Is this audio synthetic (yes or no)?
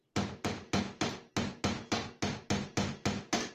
no